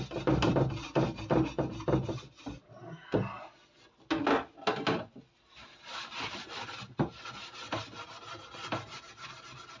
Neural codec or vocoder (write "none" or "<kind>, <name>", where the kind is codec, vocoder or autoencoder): none